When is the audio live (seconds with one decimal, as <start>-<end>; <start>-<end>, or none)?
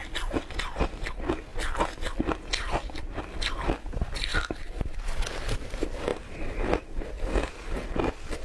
0.0-8.4